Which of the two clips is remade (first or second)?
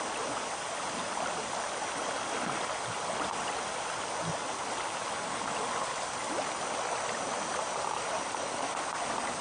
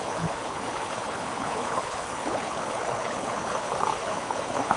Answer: second